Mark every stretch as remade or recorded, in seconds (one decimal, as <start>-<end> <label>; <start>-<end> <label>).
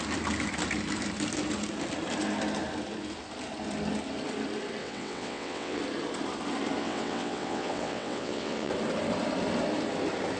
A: 0.0-4.8 recorded; 4.8-5.8 remade; 5.8-6.8 recorded; 6.8-8.7 remade; 8.7-10.4 recorded